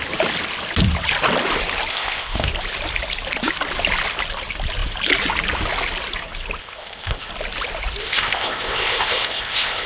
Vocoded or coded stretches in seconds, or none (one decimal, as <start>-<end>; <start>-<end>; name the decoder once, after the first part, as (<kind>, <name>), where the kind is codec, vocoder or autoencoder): 1.9-2.5 (codec, ZipCodec); 6.6-7.3; 8.0-9.9